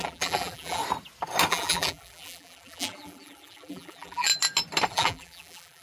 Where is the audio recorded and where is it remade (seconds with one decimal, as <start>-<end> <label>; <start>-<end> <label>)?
0.0-0.8 remade; 0.8-1.5 recorded; 1.5-4.3 remade; 4.3-4.9 recorded; 4.9-5.8 remade